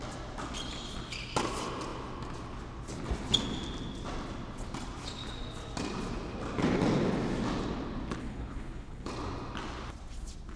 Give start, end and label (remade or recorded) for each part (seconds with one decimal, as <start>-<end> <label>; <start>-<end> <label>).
0.0-8.2 recorded; 8.2-9.1 remade; 9.1-10.6 recorded